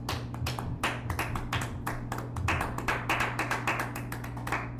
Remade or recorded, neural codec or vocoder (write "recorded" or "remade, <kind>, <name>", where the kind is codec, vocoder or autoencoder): recorded